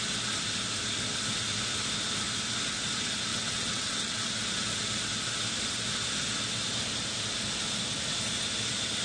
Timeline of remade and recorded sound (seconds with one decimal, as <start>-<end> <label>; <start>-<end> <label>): 0.0-3.3 recorded; 3.3-4.3 remade; 4.3-9.0 recorded